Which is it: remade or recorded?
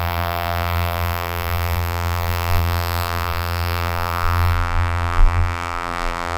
remade